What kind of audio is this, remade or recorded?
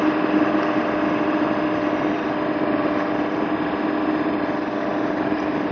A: recorded